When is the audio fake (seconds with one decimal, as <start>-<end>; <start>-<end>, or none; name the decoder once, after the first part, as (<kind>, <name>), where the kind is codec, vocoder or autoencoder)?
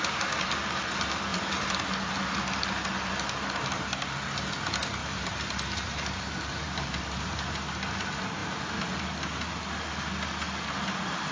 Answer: 5.0-7.6 (vocoder, BigVGAN v2)